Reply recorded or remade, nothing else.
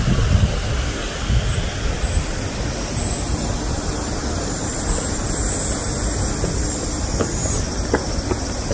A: recorded